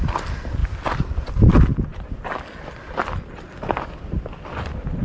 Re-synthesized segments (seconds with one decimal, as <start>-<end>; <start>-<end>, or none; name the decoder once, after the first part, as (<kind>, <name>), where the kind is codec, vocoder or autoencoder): none